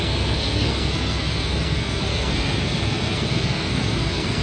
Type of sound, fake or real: fake